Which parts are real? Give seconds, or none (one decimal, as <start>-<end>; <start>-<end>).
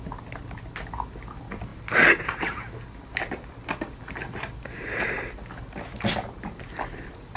0.0-7.4